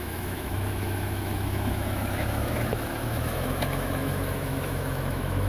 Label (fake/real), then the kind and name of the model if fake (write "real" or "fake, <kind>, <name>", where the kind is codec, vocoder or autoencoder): fake, autoencoder, DAC-VAE